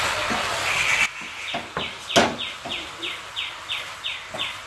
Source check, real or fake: real